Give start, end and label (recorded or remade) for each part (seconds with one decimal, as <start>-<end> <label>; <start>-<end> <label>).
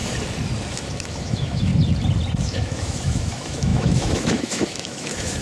0.0-0.7 recorded; 0.7-1.7 remade; 1.7-2.4 recorded; 2.4-5.4 remade